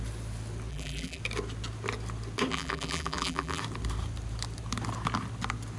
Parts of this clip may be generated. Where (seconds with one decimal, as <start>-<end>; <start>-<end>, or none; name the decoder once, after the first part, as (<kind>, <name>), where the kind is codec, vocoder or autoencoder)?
0.7-1.2 (vocoder, BigVGAN v2); 2.5-3.6